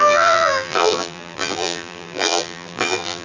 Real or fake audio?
fake